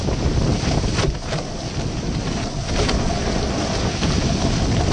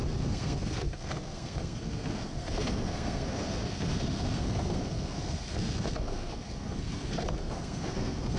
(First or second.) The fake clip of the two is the second